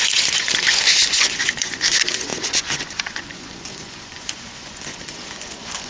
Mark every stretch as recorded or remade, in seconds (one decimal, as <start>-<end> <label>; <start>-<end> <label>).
0.0-5.9 remade